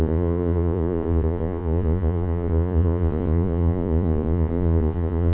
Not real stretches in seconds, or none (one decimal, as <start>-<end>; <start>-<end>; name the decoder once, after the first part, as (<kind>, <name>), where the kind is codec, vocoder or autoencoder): 0.0-5.3 (vocoder, Vocos)